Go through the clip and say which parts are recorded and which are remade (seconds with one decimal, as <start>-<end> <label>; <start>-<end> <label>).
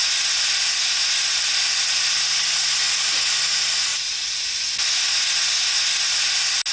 0.0-3.9 recorded; 3.9-4.5 remade; 4.5-6.7 recorded